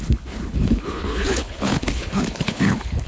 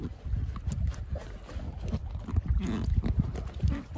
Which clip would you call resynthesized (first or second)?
first